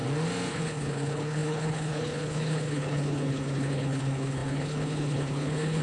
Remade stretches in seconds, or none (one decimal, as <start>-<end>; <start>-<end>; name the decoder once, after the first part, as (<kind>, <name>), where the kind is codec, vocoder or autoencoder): 0.5-5.8 (codec, HILCodec)